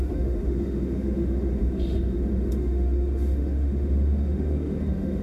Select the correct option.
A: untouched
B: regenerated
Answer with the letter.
B